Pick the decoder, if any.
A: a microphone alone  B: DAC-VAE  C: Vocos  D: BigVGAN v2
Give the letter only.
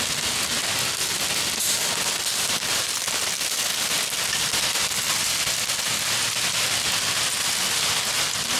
A